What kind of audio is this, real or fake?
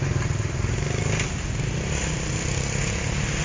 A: real